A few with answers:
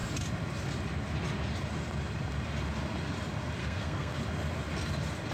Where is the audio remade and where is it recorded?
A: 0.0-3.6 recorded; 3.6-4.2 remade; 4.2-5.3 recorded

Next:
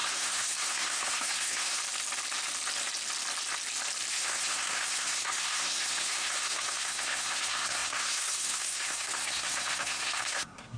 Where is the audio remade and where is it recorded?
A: 0.0-1.8 remade; 1.8-4.1 recorded; 4.1-10.8 remade

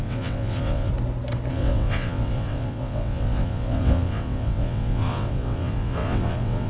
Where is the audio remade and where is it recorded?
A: 0.0-0.9 remade; 0.9-1.5 recorded; 1.5-6.7 remade

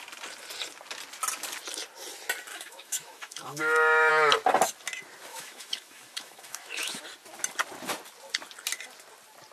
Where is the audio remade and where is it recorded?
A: 0.0-2.5 recorded; 2.5-4.1 remade; 4.1-5.3 recorded; 5.3-7.0 remade; 7.0-9.5 recorded